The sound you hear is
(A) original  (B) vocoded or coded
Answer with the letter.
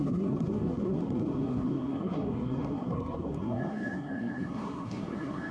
B